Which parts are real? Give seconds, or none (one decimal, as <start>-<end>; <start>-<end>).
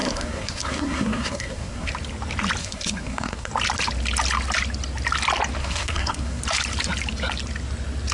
1.9-2.6; 3.5-5.6; 6.4-8.1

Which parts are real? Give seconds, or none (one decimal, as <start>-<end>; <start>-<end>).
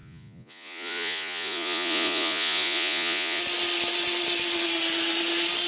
3.4-5.7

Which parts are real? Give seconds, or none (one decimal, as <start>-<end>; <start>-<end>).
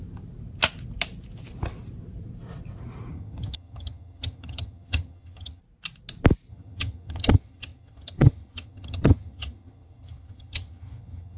0.0-3.1; 5.6-6.5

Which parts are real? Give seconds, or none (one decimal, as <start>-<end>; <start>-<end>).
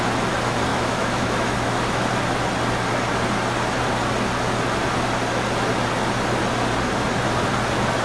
0.0-0.7; 2.1-8.0